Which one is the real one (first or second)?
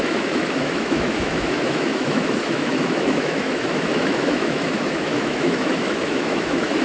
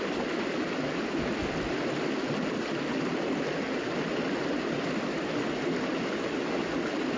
second